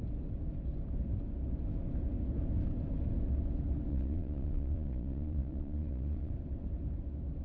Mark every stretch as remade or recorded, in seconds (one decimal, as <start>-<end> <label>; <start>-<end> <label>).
0.0-3.9 recorded; 3.9-6.3 remade; 6.3-7.4 recorded